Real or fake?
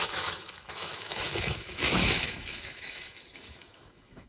fake